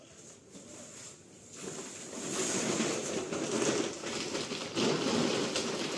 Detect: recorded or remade recorded